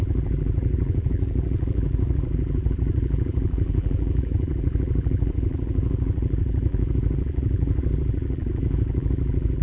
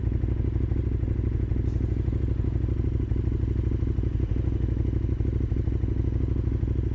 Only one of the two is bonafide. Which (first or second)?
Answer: second